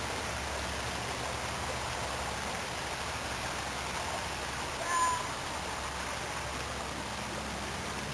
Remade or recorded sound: recorded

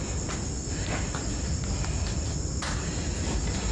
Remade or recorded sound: recorded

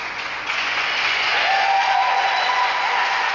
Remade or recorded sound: remade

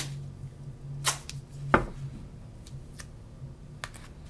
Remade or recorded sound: recorded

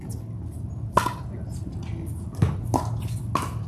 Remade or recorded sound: recorded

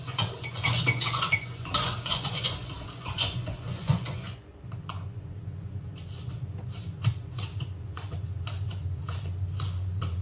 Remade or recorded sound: remade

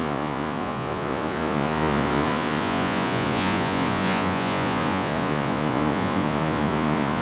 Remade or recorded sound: remade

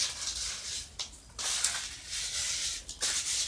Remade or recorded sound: recorded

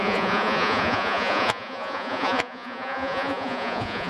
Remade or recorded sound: remade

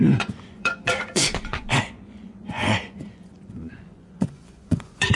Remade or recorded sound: remade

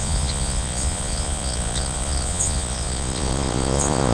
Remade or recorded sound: remade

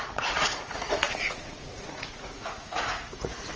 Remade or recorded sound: remade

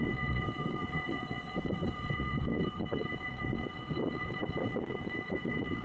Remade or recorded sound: remade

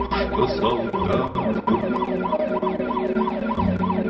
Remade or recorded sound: recorded